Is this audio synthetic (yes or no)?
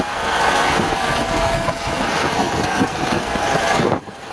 yes